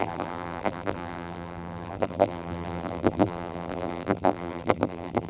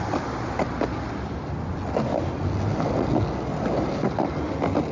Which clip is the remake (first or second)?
first